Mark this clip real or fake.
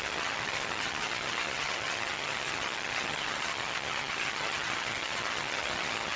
fake